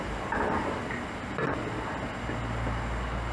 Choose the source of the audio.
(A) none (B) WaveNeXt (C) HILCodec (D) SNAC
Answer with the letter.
A